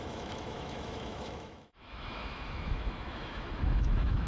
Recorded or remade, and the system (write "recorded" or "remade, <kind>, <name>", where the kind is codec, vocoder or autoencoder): remade, autoencoder, DAC-VAE